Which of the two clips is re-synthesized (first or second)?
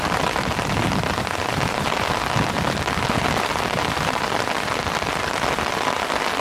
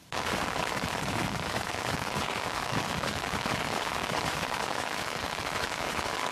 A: second